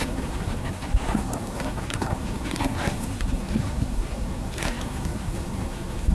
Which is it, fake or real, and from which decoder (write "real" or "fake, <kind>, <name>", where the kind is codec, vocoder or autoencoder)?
fake, codec, SNAC